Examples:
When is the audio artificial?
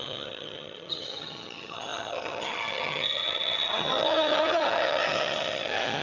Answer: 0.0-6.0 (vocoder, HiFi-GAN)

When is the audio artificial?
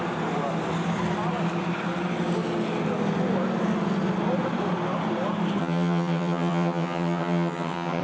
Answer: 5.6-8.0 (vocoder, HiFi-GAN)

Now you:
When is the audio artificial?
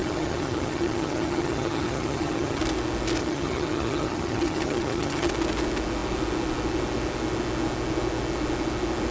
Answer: 0.0-2.6 (vocoder, HiFi-GAN); 3.2-5.3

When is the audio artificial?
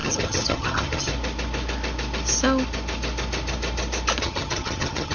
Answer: 0.0-1.1 (vocoder, HiFi-GAN); 4.2-5.1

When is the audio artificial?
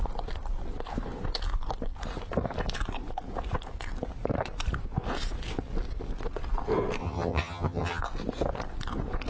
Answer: 7.0-8.0 (vocoder, HiFi-GAN)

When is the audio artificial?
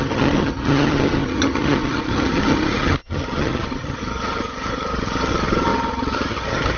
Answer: 0.0-6.8 (vocoder, HiFi-GAN)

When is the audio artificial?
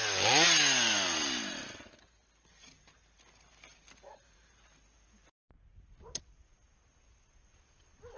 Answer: none